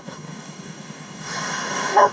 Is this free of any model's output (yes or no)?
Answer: no